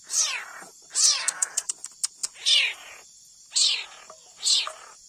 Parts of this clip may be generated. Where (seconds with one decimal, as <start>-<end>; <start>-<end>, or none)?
1.2-1.7